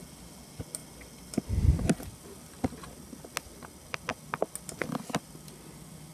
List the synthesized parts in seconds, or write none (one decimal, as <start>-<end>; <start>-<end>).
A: none